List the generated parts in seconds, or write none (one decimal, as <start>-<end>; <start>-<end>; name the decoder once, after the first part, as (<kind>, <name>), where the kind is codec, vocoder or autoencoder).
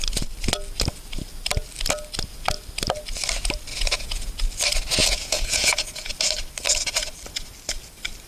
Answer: 3.7-4.3 (vocoder, Vocos); 5.0-6.1